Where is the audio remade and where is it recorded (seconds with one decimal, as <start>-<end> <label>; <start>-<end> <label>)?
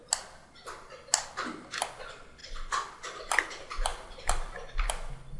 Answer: 0.0-3.9 recorded; 3.9-4.7 remade; 4.7-5.4 recorded